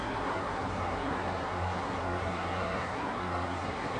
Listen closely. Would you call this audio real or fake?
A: fake